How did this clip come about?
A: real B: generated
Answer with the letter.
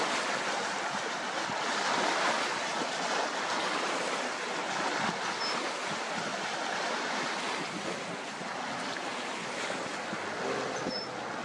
A